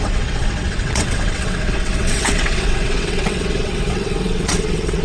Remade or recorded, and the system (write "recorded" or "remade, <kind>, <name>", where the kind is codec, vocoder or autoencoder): remade, vocoder, WaveNeXt